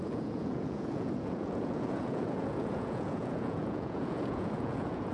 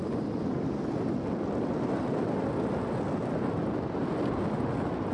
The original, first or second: second